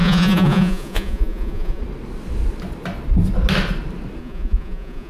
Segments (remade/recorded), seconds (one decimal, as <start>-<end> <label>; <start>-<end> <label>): 0.0-1.8 remade; 1.8-4.2 recorded; 4.2-5.1 remade